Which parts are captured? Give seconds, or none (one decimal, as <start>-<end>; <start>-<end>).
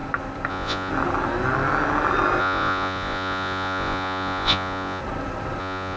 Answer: 0.0-0.5; 0.9-2.4; 5.0-5.6